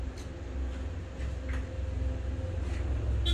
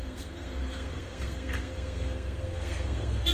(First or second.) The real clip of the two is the first